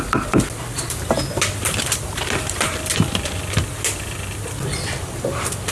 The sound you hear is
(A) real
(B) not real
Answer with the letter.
B